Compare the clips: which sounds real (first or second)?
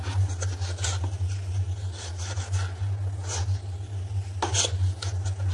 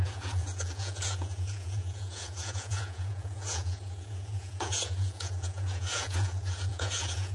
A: first